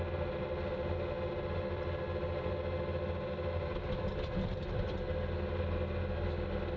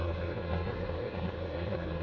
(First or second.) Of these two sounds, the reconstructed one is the second